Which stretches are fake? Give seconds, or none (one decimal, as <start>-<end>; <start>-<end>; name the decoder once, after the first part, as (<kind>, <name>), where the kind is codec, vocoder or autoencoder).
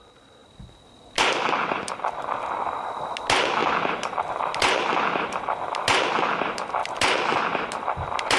none